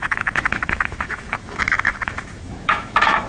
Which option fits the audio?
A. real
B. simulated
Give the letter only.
B